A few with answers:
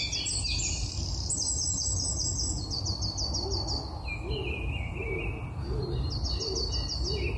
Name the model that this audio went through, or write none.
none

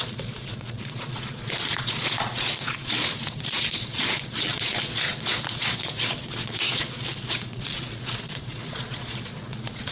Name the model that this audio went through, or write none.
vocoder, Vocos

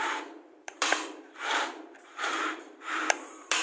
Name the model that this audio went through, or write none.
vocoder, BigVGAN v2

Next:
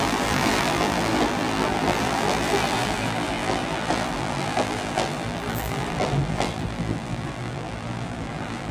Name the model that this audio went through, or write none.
vocoder, BigVGAN v2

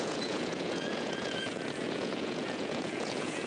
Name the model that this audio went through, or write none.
vocoder, Vocos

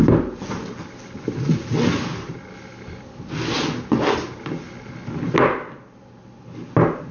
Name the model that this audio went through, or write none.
none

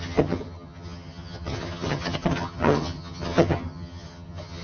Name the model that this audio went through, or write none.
vocoder, HiFi-GAN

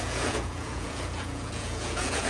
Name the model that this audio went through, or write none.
vocoder, Vocos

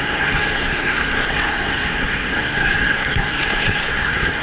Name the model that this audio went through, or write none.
codec, SNAC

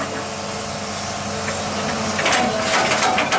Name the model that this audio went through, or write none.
none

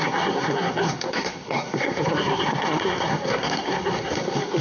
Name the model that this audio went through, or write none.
codec, SNAC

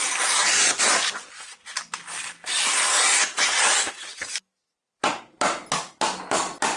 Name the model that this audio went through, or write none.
none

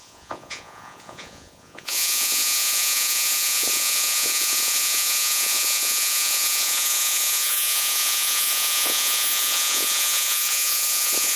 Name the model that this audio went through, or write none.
vocoder, Vocos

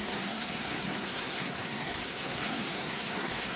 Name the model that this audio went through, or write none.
codec, SNAC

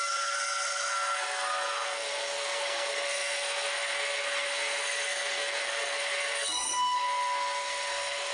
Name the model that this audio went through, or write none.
codec, SNAC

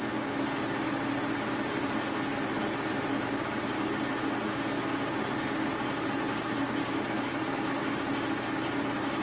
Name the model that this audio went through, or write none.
none